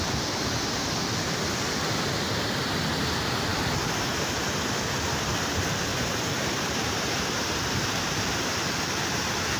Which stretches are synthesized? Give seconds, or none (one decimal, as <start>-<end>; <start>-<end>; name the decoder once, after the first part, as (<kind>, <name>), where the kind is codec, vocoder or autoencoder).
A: 5.9-8.7 (vocoder, BigVGAN v2)